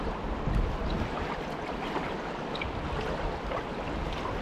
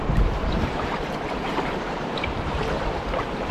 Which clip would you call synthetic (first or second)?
second